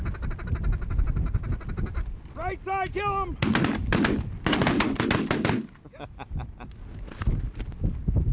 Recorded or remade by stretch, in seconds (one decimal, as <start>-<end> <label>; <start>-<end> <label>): 0.0-8.3 recorded

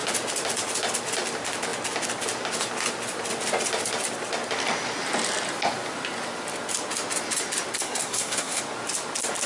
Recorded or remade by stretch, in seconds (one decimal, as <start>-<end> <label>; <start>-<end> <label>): 0.0-7.8 recorded; 7.8-8.6 remade; 8.6-9.5 recorded

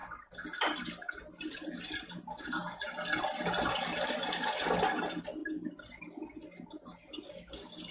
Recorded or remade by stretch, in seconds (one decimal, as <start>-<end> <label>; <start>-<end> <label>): 0.0-1.3 remade; 1.3-7.9 recorded

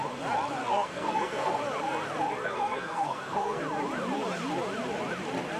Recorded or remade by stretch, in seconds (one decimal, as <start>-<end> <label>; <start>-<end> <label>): 0.0-0.6 recorded; 0.6-1.6 remade; 1.6-2.4 recorded; 2.4-3.6 remade; 3.6-5.6 recorded

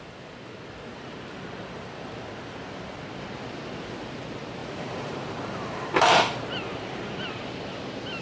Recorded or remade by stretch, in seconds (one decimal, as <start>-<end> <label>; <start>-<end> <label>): 0.0-0.9 recorded; 0.9-2.1 remade; 2.1-4.6 recorded; 4.6-7.4 remade; 7.4-8.2 recorded